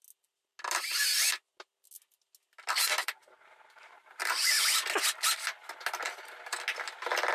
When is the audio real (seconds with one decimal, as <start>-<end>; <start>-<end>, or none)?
0.0-3.0; 4.5-7.3